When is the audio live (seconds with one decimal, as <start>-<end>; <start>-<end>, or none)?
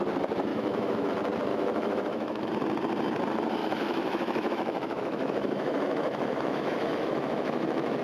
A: 0.0-0.5; 1.1-1.5; 2.5-3.6